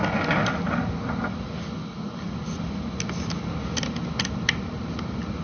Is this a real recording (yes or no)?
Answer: yes